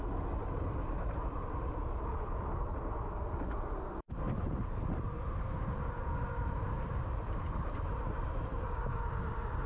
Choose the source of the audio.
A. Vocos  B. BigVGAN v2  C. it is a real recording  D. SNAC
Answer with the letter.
C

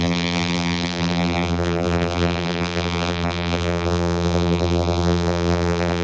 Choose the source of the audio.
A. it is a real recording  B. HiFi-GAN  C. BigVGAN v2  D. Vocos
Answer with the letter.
C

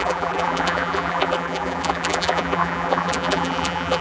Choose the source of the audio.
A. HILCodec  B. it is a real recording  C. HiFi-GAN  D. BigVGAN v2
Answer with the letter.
D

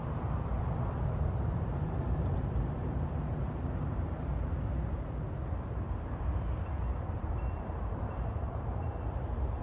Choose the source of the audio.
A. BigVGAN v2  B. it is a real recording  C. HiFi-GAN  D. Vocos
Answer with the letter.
A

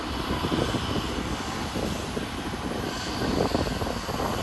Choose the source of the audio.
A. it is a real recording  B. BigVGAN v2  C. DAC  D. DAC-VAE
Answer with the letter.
A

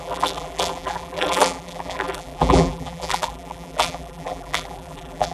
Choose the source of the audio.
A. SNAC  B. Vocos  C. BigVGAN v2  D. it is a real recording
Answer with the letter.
C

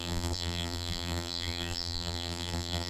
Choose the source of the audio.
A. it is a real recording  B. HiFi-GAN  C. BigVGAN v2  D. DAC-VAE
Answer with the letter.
C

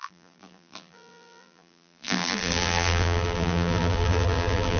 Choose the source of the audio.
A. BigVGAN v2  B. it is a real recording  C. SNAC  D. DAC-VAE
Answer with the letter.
A